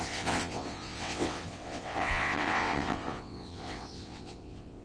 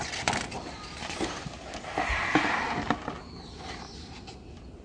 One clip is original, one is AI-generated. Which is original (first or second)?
second